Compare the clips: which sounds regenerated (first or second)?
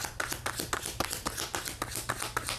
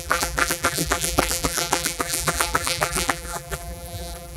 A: second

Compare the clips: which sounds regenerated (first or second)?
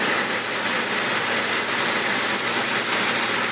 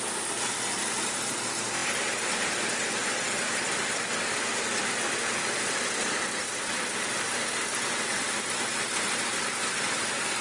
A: second